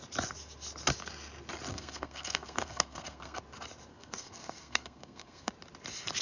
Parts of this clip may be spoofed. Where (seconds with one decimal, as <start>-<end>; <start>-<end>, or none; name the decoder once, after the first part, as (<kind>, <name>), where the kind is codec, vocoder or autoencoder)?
1.7-3.4 (codec, SNAC); 3.9-5.5